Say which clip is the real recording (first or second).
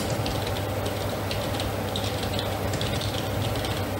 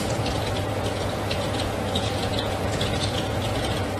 first